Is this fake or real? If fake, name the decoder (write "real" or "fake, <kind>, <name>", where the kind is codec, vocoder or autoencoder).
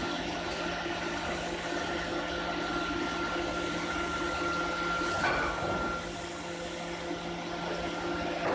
real